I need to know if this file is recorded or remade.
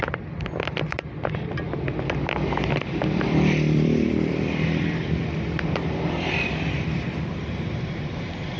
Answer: remade